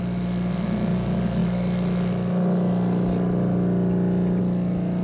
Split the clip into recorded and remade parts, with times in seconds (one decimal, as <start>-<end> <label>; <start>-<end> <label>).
0.0-5.0 recorded

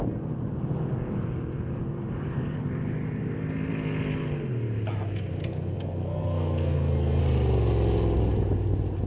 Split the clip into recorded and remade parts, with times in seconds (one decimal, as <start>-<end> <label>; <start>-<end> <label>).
0.0-5.4 recorded; 5.4-7.2 remade; 7.2-9.1 recorded

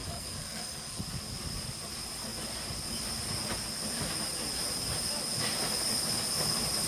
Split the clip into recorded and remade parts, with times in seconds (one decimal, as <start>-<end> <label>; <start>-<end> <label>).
0.0-1.0 remade; 1.0-6.9 recorded

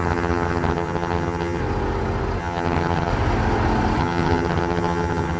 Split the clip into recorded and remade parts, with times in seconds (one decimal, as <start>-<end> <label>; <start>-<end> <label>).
0.0-1.6 remade; 1.6-2.4 recorded; 2.4-3.1 remade; 3.1-4.0 recorded; 4.0-5.4 remade

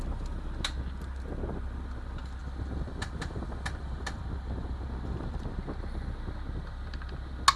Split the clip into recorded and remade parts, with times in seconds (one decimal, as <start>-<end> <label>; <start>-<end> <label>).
0.0-7.6 recorded